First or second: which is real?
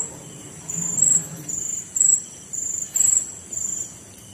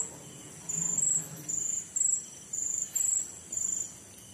second